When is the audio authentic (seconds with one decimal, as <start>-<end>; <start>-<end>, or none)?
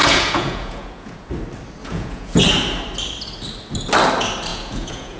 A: 1.3-1.8; 2.4-4.5